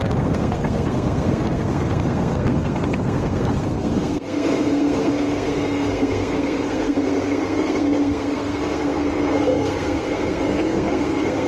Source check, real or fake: fake